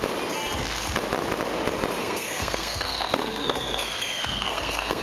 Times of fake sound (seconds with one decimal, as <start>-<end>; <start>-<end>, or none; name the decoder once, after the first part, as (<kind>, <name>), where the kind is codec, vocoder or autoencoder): 2.0-5.0 (codec, SNAC)